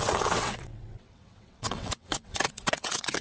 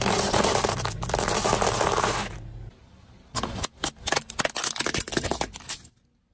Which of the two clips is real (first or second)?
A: second